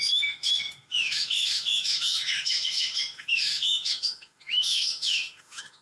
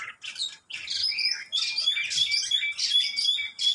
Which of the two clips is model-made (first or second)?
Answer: first